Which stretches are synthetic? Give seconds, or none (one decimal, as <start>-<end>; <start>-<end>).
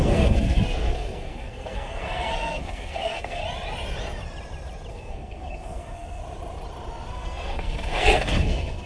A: 0.0-3.4; 4.9-6.2; 7.1-8.9